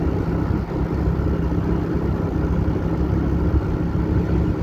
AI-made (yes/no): no